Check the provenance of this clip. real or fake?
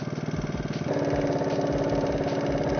real